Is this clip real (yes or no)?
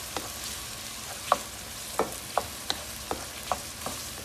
no